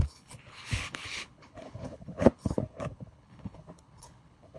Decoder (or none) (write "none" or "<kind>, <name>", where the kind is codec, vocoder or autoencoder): codec, HILCodec